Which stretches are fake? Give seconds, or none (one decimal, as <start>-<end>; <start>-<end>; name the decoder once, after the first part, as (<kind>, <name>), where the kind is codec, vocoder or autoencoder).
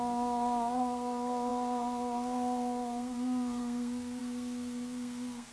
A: 0.0-5.5 (codec, SNAC)